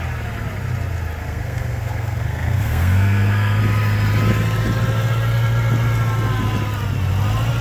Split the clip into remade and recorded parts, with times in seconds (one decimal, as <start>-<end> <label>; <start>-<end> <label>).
0.0-1.2 recorded; 1.2-3.6 remade; 3.6-7.6 recorded